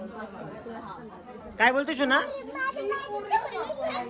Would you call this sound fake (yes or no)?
no